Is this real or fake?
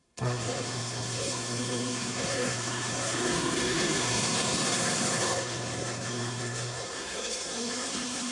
fake